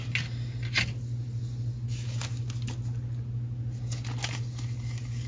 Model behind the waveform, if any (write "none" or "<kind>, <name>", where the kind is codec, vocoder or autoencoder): none